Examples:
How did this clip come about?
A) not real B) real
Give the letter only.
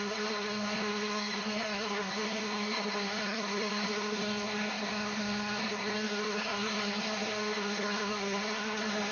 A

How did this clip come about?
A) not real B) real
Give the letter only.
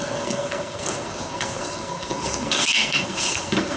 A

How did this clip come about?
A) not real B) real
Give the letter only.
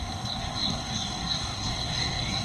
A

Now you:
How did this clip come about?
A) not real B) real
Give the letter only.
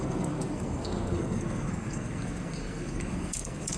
A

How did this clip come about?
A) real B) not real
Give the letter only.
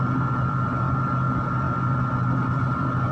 A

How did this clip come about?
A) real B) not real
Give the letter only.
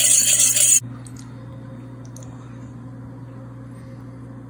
A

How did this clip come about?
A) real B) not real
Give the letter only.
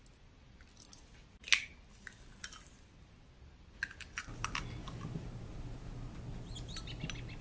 A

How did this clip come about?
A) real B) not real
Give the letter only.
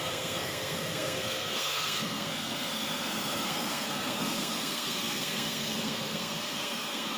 B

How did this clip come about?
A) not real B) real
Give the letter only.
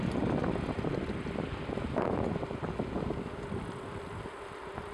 B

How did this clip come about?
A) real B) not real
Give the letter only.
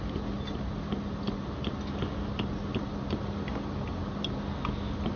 A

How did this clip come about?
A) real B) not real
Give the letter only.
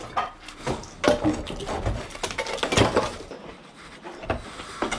A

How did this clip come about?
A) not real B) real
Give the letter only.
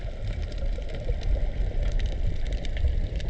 B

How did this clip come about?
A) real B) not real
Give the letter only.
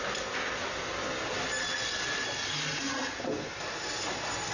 A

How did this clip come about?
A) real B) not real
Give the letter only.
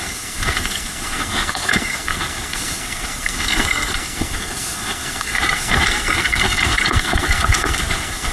B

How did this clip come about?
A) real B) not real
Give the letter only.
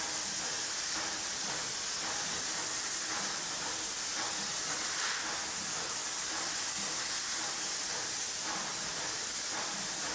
A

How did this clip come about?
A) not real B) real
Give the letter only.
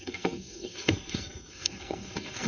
A